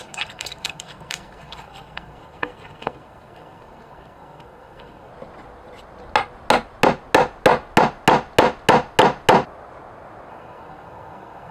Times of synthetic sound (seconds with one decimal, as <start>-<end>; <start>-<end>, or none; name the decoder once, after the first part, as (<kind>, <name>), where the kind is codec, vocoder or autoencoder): 0.0-5.1 (codec, SNAC); 10.3-11.5